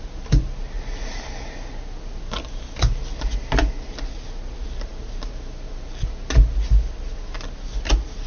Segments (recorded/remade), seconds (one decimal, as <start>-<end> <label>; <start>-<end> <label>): 0.0-8.3 recorded